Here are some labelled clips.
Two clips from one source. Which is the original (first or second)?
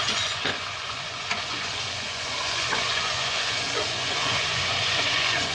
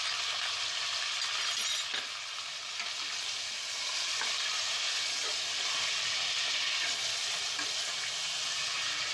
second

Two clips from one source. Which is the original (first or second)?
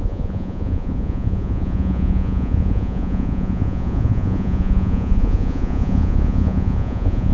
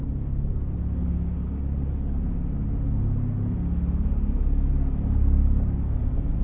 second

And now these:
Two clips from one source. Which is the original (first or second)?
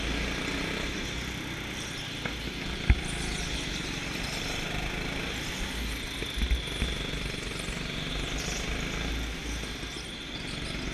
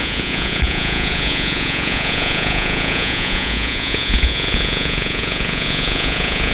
first